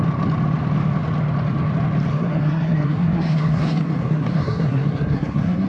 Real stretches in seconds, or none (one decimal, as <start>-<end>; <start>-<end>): 0.0-2.1